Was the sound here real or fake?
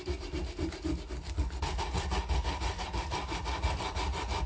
real